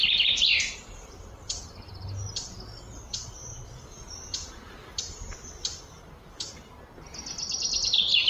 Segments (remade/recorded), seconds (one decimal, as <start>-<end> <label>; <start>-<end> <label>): 0.0-8.3 recorded